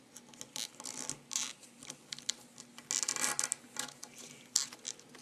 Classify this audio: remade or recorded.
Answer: recorded